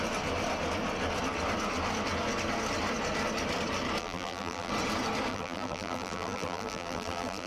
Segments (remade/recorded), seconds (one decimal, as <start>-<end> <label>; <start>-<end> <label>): 0.0-4.0 recorded; 4.0-4.7 remade; 4.7-5.3 recorded; 5.3-7.5 remade